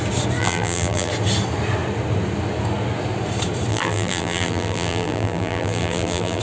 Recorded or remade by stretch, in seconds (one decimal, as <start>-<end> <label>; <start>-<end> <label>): 0.0-0.4 recorded; 0.4-1.1 remade; 1.1-3.7 recorded; 3.7-6.4 remade